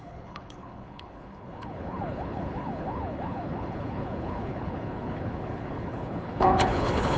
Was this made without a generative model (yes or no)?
no